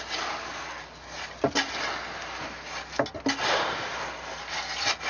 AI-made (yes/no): no